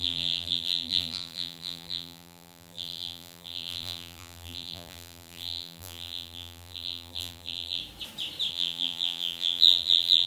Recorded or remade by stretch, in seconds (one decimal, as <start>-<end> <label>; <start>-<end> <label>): 0.0-7.8 remade; 7.8-8.5 recorded; 8.5-10.3 remade